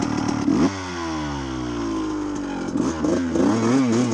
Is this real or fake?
real